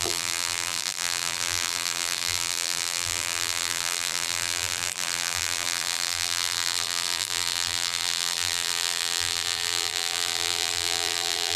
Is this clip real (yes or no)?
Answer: no